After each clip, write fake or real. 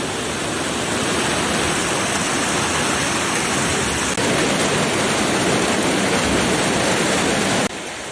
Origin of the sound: real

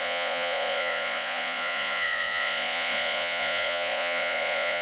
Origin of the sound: fake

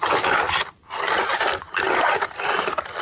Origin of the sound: fake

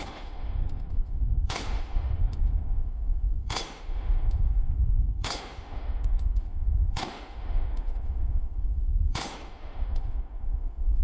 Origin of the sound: fake